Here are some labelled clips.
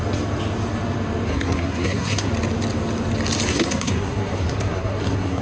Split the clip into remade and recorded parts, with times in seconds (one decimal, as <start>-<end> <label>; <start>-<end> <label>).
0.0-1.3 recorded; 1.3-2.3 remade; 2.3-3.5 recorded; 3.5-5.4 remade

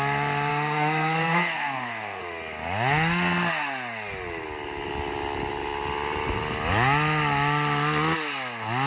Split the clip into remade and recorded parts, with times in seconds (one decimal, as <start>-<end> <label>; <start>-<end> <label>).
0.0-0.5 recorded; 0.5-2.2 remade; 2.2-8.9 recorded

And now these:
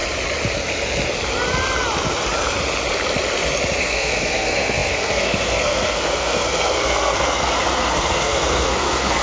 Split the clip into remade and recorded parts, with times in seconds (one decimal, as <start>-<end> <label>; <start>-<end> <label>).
0.0-3.8 recorded; 3.8-9.2 remade

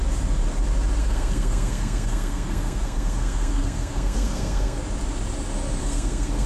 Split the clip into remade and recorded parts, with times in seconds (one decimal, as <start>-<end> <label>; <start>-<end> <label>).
0.0-1.0 recorded; 1.0-4.8 remade; 4.8-5.8 recorded; 5.8-6.5 remade

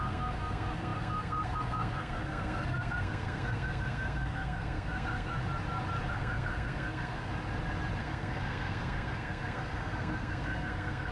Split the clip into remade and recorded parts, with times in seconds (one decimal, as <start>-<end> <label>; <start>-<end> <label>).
0.0-5.4 remade; 5.4-6.1 recorded; 6.1-7.3 remade; 7.3-8.0 recorded; 8.0-11.1 remade